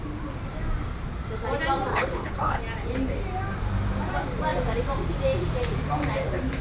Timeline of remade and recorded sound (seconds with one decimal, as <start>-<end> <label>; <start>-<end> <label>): 0.0-1.9 recorded; 1.9-2.6 remade; 2.6-6.6 recorded